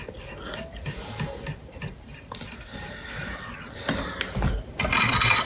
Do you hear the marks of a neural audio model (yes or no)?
no